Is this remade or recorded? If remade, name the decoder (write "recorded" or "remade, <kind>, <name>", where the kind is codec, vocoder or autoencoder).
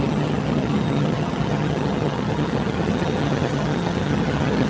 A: remade, vocoder, HiFi-GAN